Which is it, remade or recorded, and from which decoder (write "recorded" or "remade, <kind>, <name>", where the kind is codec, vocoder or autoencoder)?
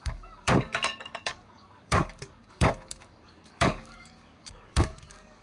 remade, codec, DAC